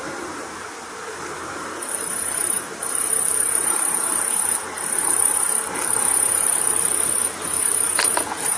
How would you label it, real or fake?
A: fake